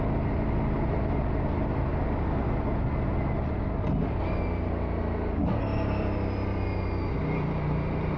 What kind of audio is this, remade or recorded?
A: recorded